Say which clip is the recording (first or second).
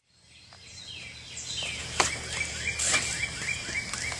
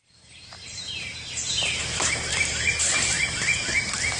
first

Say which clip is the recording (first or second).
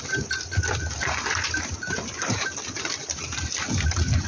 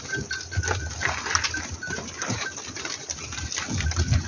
second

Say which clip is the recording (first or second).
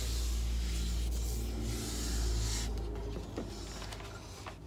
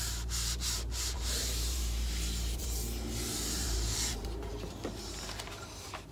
first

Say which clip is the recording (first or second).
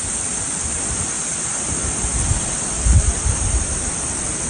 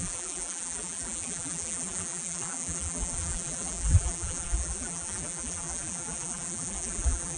first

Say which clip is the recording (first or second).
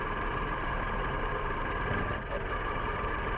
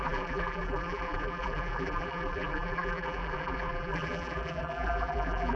first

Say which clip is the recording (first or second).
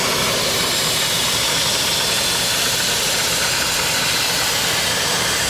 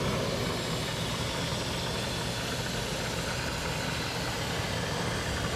second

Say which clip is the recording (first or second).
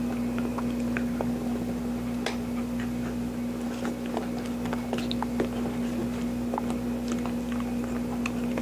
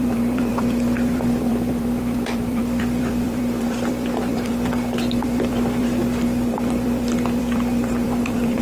first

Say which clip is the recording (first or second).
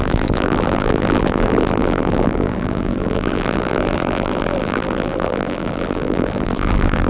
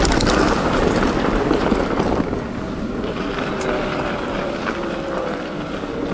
second